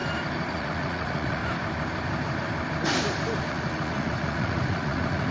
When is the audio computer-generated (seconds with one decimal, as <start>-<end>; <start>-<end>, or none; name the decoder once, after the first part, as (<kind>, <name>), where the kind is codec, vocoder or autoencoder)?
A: 0.5-1.4 (vocoder, Vocos); 3.4-5.3